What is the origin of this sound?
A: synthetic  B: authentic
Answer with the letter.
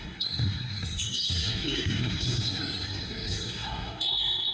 A